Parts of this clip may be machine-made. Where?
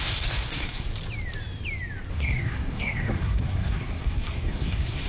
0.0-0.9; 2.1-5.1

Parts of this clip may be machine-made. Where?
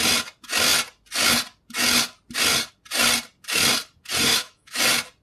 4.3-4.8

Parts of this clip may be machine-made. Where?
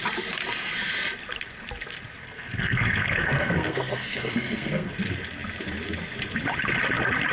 2.2-4.9